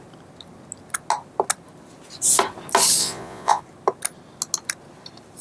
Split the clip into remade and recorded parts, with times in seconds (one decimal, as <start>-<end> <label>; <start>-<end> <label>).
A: 0.0-3.0 recorded; 3.0-3.6 remade; 3.6-5.4 recorded